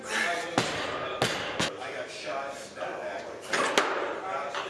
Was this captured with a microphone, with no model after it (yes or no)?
yes